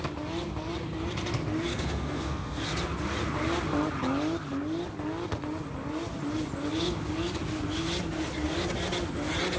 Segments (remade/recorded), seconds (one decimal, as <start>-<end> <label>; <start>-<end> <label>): 0.0-1.7 recorded; 1.7-2.6 remade; 2.6-9.6 recorded